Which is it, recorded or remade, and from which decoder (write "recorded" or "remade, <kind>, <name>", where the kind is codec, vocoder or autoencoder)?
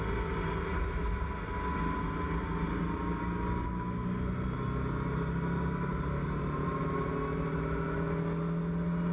recorded